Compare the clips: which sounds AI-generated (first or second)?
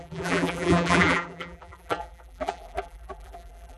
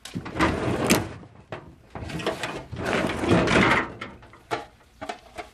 first